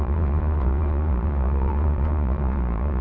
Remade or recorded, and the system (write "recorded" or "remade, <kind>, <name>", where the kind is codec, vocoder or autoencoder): remade, vocoder, Vocos